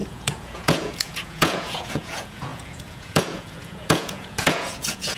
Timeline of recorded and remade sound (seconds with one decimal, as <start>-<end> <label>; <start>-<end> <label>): 0.0-5.2 remade